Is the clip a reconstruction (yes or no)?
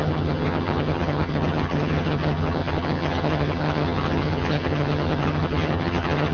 yes